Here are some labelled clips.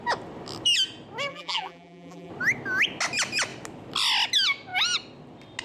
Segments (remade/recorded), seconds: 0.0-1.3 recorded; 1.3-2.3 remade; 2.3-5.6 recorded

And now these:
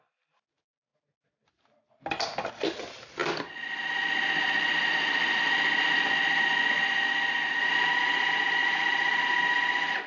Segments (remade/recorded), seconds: 0.0-3.2 recorded; 3.2-5.5 remade; 5.5-8.6 recorded; 8.6-9.2 remade; 9.2-10.1 recorded

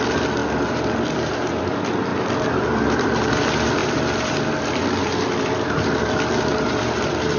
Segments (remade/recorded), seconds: 0.0-7.4 remade

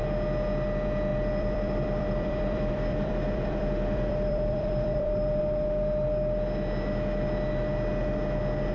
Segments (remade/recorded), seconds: 0.0-1.1 recorded; 1.1-5.4 remade; 5.4-8.7 recorded